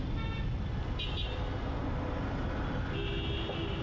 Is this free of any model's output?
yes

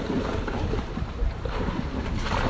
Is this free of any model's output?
no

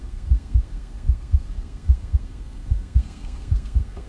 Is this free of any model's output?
no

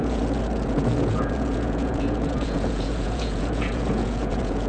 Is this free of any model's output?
no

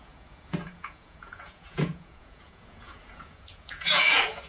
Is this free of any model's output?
no